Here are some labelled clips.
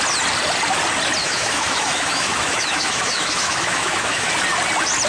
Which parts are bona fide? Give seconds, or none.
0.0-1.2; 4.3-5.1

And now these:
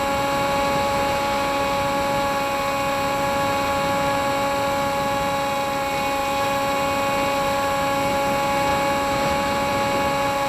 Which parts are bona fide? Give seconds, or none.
0.0-10.5

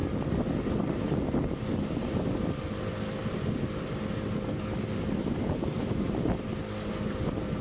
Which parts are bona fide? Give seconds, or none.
0.0-7.6